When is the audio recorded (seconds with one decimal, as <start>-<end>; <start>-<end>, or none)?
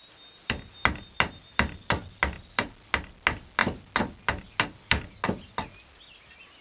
0.0-6.6